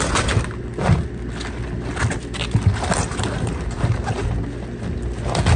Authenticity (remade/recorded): recorded